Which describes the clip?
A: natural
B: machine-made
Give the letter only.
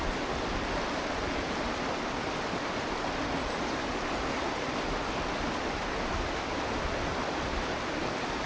A